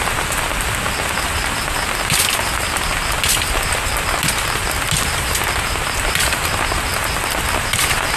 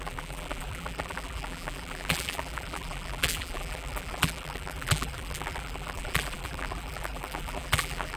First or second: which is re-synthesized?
second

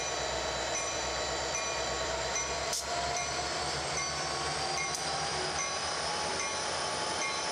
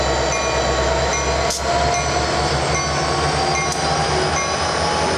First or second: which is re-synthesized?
first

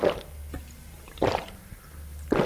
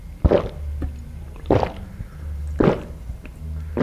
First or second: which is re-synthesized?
first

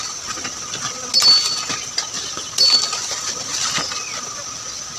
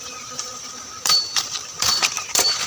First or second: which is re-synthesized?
second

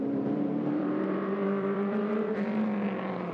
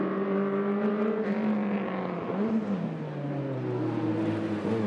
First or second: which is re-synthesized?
first